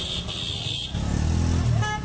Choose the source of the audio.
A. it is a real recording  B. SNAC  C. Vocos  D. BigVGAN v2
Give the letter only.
A